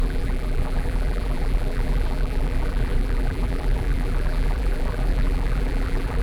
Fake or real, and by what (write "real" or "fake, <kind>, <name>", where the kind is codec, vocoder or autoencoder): fake, vocoder, BigVGAN v2